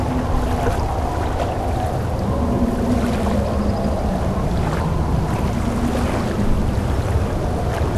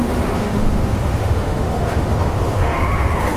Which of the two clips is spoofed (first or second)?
second